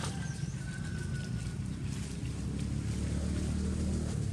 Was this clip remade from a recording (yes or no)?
no